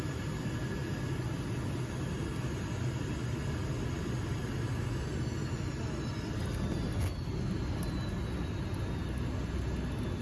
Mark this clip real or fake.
real